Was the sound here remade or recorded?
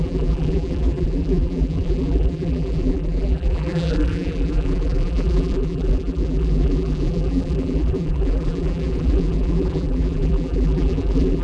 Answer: remade